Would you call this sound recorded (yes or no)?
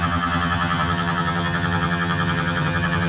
no